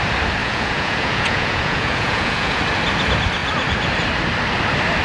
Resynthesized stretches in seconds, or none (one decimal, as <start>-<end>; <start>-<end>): 0.4-2.6